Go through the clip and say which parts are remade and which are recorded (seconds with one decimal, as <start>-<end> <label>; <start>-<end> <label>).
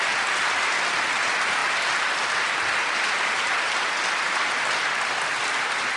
0.0-6.0 recorded